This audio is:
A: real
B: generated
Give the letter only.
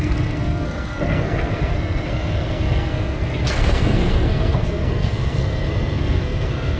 B